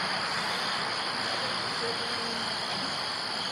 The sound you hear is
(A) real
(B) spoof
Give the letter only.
A